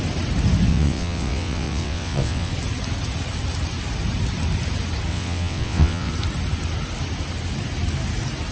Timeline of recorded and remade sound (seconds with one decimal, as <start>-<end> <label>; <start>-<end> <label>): 0.0-0.7 recorded; 0.7-2.5 remade; 2.5-5.1 recorded; 5.1-6.1 remade; 6.1-8.5 recorded